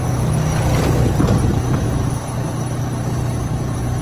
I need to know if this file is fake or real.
real